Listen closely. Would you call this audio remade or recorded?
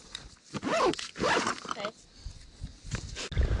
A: recorded